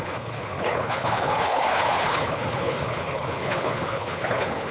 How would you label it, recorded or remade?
remade